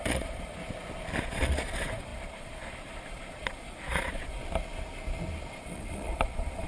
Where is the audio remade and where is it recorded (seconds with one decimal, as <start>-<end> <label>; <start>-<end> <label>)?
0.0-0.6 remade; 0.6-1.2 recorded; 1.2-4.4 remade; 4.4-5.6 recorded; 5.6-6.7 remade